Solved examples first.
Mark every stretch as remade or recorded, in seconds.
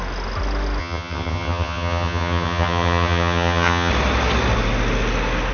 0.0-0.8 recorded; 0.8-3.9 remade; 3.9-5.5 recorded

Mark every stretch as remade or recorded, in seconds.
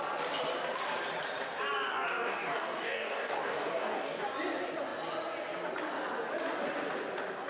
0.0-1.9 recorded; 1.9-4.2 remade; 4.2-7.5 recorded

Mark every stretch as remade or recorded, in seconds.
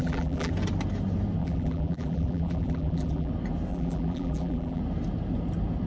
0.0-0.5 remade; 0.5-1.4 recorded; 1.4-3.3 remade; 3.3-3.7 recorded; 3.7-4.8 remade; 4.8-5.9 recorded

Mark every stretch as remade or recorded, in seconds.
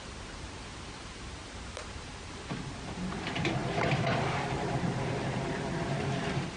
0.0-3.2 remade; 3.2-3.6 recorded; 3.6-6.6 remade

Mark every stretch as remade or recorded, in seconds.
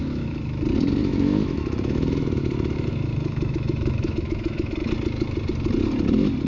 0.0-0.6 remade; 0.6-1.0 recorded; 1.0-4.9 remade; 4.9-6.5 recorded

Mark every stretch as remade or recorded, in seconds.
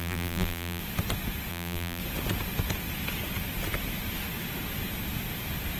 0.0-0.8 remade; 0.8-1.5 recorded; 1.5-2.0 remade; 2.0-5.8 recorded